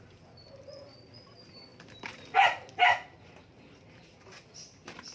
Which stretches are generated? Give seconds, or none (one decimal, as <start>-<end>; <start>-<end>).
none